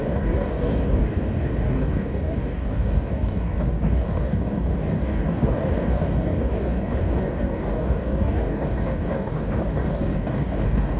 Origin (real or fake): fake